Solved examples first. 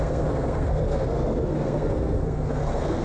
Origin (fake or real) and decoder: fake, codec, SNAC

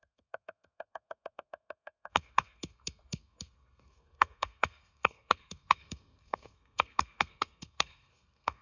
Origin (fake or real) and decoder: fake, codec, SNAC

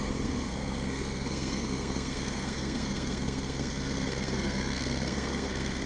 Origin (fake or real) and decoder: fake, codec, SNAC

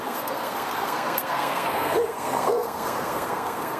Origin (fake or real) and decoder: fake, codec, SNAC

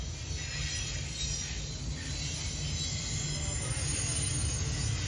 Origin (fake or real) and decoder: real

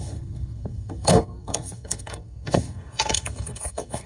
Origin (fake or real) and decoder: fake, codec, SNAC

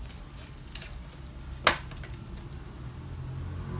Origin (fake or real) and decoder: real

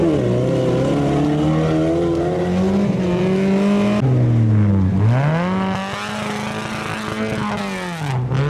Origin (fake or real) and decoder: real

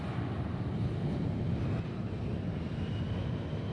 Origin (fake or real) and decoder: real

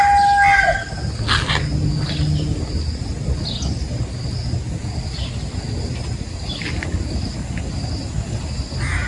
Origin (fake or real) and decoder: real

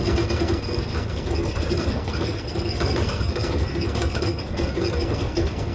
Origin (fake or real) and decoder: fake, codec, SNAC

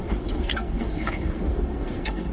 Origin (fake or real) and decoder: fake, codec, SNAC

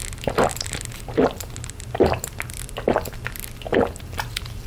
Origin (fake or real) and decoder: real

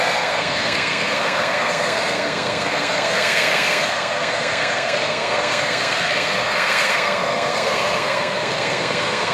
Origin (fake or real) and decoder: fake, codec, SNAC